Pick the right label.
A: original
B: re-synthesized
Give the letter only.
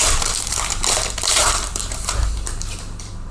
B